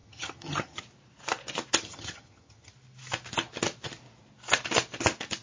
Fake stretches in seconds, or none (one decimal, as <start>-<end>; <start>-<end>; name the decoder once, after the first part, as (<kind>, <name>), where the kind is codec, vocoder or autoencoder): 0.0-0.8 (vocoder, HiFi-GAN); 1.8-2.7